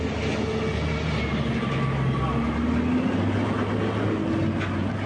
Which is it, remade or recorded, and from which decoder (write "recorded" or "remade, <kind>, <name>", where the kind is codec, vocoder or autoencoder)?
recorded